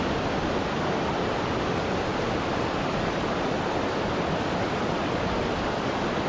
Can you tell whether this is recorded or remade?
remade